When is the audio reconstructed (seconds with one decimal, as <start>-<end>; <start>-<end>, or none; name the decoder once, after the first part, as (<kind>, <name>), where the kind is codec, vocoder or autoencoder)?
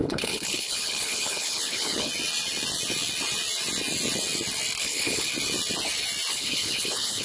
0.0-2.1 (codec, HILCodec); 4.8-5.3; 6.3-7.2